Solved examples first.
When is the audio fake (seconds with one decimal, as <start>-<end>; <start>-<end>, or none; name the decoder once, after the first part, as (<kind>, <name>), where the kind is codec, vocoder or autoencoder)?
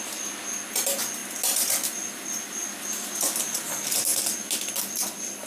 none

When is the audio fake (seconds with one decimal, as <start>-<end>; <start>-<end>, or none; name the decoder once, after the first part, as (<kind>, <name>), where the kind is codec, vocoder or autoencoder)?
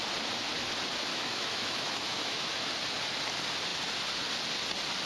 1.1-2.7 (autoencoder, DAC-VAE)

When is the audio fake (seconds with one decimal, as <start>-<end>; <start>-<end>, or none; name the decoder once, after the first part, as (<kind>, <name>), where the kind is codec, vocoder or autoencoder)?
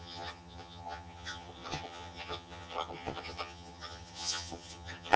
0.0-5.2 (vocoder, HiFi-GAN)